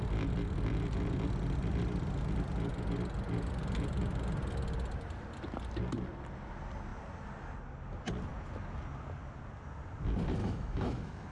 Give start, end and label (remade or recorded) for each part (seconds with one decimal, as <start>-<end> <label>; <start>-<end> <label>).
0.0-10.4 recorded; 10.4-11.3 remade